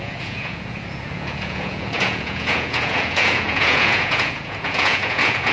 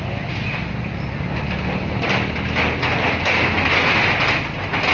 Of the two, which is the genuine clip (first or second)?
second